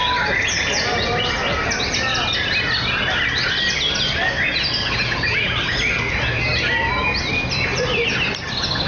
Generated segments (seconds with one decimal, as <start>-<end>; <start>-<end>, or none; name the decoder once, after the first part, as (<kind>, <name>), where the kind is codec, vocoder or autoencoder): none